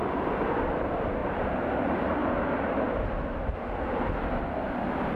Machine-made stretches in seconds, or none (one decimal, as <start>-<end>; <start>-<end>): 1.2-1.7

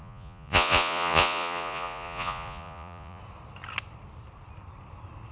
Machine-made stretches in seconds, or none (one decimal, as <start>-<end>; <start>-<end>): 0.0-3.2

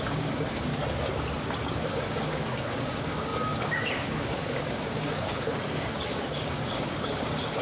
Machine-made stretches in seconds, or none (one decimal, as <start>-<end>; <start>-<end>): 0.0-0.7; 1.7-7.6